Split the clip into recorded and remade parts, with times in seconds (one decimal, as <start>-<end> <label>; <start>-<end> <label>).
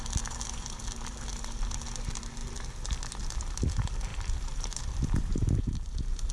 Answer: 0.0-4.1 recorded; 4.1-6.3 remade